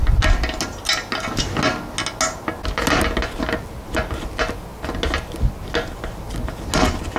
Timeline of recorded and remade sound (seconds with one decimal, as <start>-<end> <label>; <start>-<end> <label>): 0.0-7.2 recorded